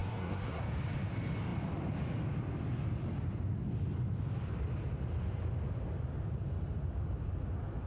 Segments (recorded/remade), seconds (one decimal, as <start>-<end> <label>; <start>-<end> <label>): 0.0-0.6 remade; 0.6-7.9 recorded